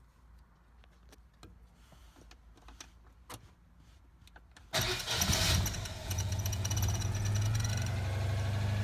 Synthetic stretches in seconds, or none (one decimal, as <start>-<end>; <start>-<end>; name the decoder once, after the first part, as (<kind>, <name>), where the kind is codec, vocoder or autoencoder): 6.0-7.7 (vocoder, Vocos)